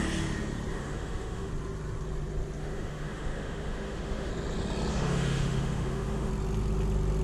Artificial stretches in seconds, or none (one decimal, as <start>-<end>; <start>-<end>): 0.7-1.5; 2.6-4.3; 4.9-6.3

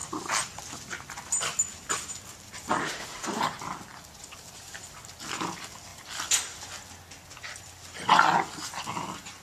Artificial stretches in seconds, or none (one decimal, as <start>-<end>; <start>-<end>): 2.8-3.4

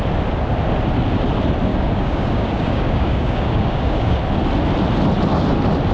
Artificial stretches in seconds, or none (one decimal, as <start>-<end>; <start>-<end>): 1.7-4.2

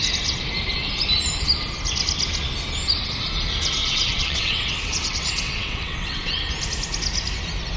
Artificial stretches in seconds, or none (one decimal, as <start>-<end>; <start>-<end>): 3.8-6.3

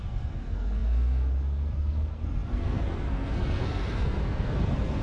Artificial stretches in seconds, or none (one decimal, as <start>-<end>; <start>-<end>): 0.0-5.0

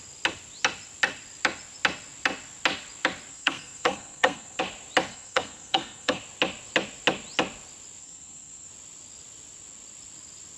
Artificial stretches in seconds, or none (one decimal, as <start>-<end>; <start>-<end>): 3.3-4.6; 5.1-6.2; 8.0-8.7

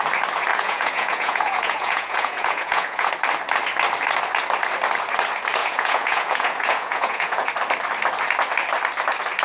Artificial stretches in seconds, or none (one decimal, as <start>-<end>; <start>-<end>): 0.5-3.1; 5.6-7.5